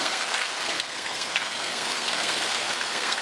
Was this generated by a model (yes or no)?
yes